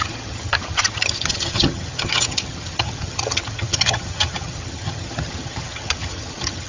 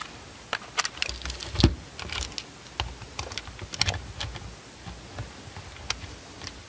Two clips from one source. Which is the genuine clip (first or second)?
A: second